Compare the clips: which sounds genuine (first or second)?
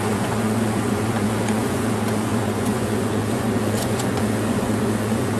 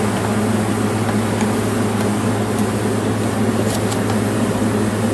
second